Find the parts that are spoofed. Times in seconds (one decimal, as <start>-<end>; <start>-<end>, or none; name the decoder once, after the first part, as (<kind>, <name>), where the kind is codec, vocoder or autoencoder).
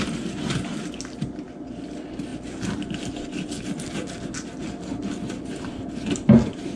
none